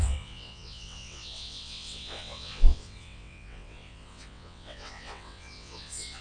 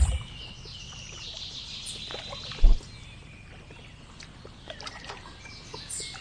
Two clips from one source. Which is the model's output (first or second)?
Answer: first